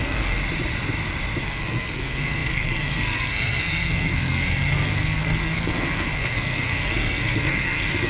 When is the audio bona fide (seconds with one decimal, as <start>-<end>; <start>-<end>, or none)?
0.4-1.4